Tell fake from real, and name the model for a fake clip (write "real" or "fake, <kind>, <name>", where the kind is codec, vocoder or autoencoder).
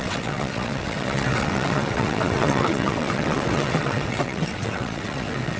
fake, vocoder, WaveNeXt